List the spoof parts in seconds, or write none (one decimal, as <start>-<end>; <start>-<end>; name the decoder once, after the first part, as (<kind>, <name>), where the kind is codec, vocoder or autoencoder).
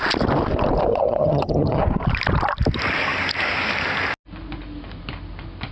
0.9-1.8 (vocoder, HiFi-GAN)